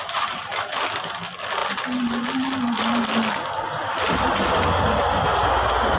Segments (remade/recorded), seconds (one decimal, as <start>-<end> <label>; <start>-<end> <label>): 0.0-6.0 recorded